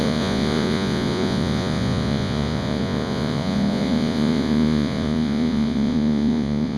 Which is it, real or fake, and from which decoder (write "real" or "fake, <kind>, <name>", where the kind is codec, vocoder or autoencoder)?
fake, vocoder, Vocos